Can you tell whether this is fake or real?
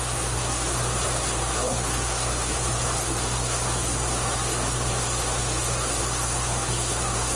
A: fake